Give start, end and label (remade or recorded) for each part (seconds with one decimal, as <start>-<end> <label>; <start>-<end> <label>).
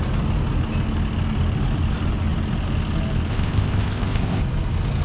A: 0.0-3.3 recorded; 3.3-4.4 remade; 4.4-5.0 recorded